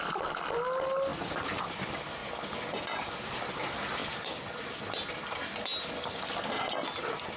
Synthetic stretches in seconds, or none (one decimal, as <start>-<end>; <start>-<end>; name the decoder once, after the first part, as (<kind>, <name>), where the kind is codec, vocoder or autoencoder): 1.1-1.6 (vocoder, BigVGAN v2); 2.2-3.3; 4.0-4.8